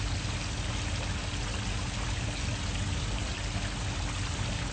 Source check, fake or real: real